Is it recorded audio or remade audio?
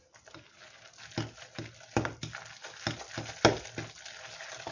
recorded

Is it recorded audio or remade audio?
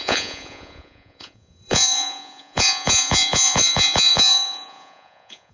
remade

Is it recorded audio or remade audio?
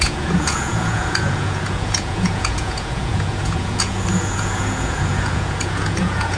remade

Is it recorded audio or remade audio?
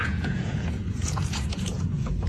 remade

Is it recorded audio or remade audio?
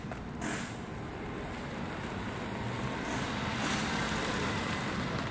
recorded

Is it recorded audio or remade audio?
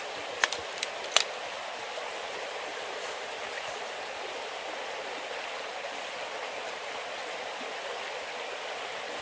recorded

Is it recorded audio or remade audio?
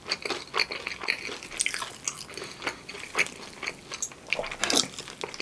recorded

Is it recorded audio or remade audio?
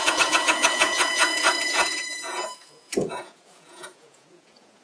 remade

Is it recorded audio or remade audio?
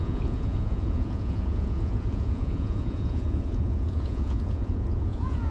remade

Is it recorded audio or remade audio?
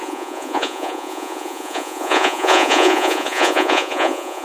remade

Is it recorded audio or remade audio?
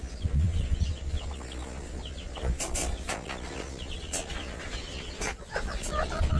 remade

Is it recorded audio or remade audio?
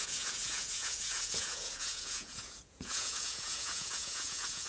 remade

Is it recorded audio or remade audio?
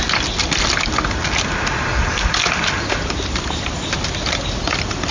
recorded